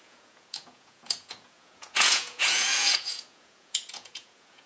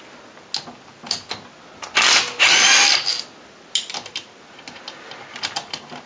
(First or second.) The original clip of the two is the second